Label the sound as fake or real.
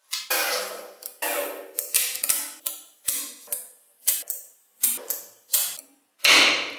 real